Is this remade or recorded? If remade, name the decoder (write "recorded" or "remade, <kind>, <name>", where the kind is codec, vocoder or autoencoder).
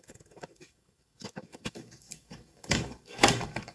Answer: remade, codec, DAC